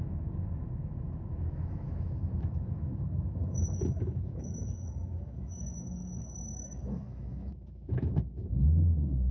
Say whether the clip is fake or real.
fake